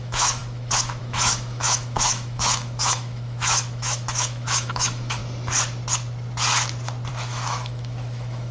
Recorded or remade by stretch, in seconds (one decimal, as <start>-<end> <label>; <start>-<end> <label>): 0.0-5.2 remade; 5.2-7.1 recorded; 7.1-8.5 remade